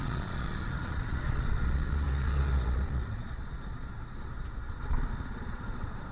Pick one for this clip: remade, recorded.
remade